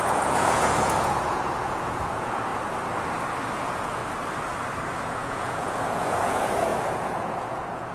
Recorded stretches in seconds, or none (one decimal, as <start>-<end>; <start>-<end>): 2.5-3.6; 4.0-5.0